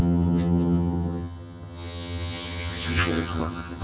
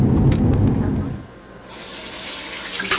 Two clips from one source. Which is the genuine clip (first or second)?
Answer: second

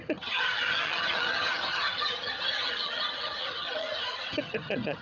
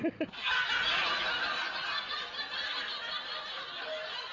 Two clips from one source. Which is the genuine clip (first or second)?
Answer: second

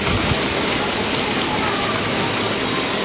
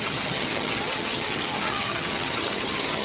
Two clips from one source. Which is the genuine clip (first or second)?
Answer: first